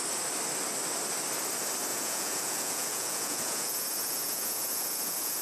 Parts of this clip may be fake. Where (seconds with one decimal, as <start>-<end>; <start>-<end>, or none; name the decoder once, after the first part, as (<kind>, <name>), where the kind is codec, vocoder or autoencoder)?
1.9-5.4 (vocoder, Vocos)